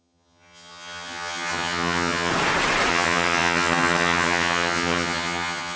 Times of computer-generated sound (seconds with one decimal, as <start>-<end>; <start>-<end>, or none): 0.0-2.3; 2.9-5.8